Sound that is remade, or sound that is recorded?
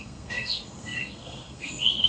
remade